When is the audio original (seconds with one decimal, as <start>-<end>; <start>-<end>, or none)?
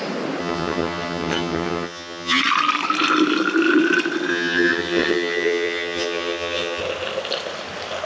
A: 0.0-0.4; 2.4-4.3; 6.8-8.1